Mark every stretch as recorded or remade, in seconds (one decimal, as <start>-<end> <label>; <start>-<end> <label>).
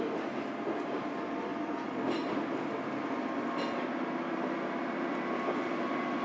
0.0-6.2 recorded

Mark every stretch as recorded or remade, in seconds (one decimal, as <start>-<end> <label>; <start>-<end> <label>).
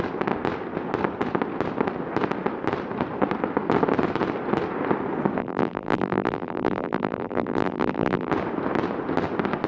0.0-5.4 recorded; 5.4-8.3 remade; 8.3-9.7 recorded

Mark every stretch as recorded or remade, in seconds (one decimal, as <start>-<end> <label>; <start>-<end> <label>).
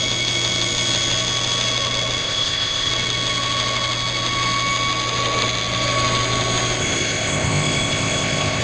0.0-2.2 recorded; 2.2-2.9 remade; 2.9-6.8 recorded; 6.8-8.6 remade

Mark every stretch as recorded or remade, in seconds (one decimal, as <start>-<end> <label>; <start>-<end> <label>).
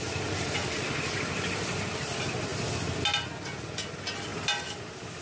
0.0-5.2 recorded